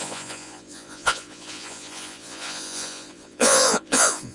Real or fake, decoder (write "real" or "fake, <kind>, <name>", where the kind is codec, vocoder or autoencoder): fake, vocoder, Vocos